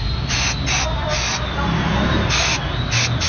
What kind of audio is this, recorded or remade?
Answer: recorded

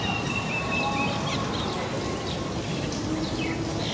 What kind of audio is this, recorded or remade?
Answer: recorded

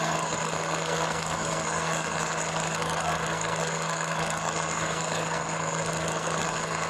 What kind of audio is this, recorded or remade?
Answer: remade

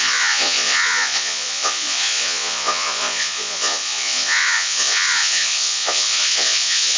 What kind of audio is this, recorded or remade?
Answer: remade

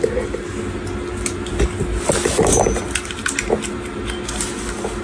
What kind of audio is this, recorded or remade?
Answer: recorded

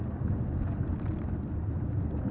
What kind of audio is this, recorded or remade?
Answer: recorded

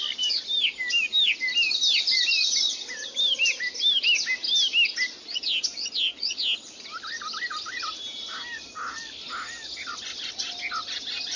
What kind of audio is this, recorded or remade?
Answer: recorded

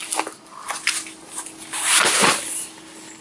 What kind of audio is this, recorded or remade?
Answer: recorded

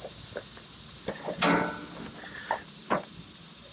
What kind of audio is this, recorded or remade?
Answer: recorded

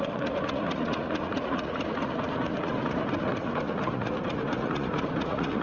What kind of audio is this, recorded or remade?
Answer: remade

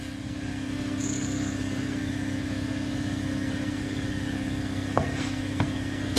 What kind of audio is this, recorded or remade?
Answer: remade